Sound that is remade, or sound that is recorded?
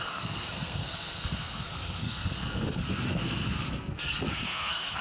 remade